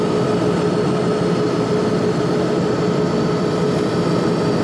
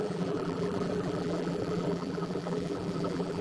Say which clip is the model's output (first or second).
second